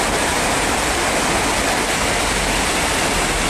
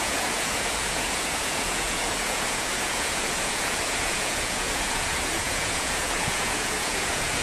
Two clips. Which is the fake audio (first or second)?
second